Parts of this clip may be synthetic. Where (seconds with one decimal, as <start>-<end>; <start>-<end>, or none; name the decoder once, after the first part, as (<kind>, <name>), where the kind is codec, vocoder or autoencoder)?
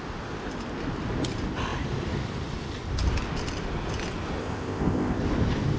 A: 4.4-5.2 (codec, ZipCodec)